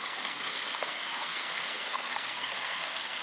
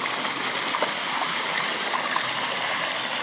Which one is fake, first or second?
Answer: first